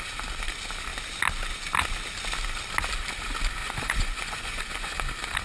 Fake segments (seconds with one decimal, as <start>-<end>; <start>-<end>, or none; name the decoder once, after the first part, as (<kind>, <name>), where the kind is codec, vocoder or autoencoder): 3.6-5.0 (vocoder, Vocos)